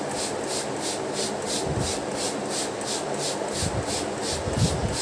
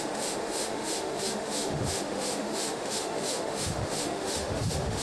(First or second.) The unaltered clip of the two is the first